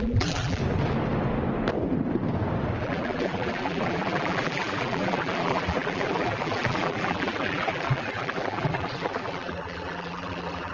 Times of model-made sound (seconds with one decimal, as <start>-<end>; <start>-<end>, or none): 0.0-0.6; 2.8-10.7